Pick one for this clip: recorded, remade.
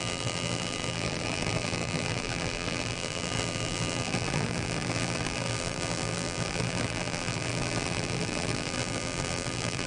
remade